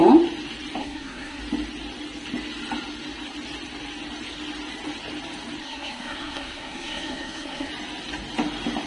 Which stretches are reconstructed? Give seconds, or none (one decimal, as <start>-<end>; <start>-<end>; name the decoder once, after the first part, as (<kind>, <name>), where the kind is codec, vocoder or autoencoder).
0.8-1.4 (codec, SNAC); 5.6-7.7